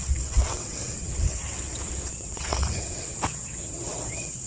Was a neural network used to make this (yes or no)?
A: yes